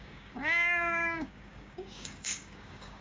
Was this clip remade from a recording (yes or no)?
yes